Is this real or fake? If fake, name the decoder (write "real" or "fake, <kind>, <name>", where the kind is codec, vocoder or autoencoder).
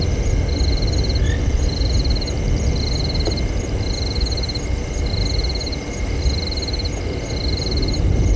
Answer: real